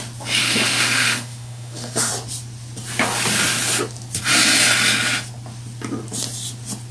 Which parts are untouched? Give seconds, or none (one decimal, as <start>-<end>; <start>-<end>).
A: 0.0-0.4; 2.1-6.9